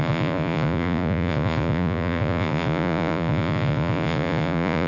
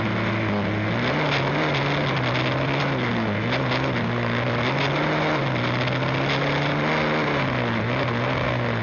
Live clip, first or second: second